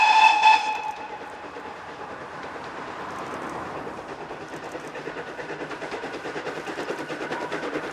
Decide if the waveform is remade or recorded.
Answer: remade